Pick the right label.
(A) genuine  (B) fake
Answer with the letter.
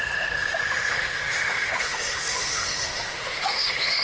B